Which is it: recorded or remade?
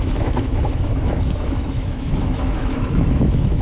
remade